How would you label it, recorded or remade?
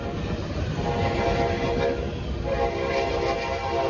recorded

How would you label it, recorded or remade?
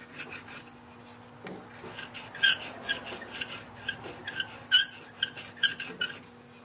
recorded